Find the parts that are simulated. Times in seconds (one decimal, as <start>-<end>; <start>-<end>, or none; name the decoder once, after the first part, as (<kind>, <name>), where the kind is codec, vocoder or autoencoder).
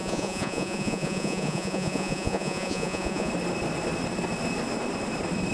0.0-3.3 (vocoder, Vocos)